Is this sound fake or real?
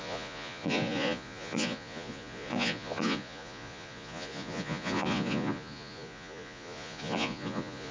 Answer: fake